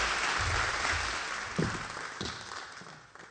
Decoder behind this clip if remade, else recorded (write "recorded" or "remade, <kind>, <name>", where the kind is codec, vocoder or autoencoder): recorded